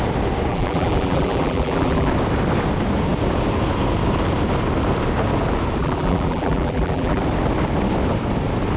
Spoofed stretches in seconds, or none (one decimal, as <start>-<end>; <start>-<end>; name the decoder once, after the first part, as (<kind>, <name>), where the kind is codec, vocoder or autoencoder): 0.5-2.1 (vocoder, BigVGAN v2); 5.8-7.2